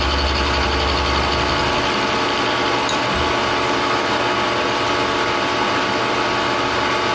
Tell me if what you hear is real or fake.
real